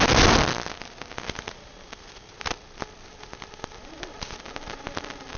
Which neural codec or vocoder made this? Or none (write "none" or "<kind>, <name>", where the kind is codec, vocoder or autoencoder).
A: none